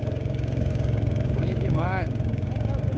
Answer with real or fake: fake